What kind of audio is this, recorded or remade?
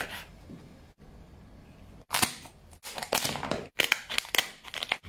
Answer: recorded